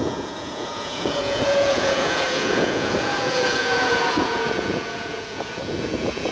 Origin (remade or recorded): remade